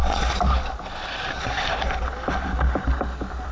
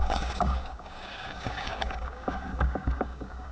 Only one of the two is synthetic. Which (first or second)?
second